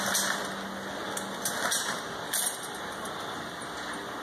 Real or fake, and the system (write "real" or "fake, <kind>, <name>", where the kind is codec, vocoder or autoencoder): real